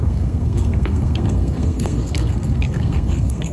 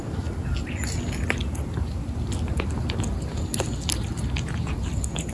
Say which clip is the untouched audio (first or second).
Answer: second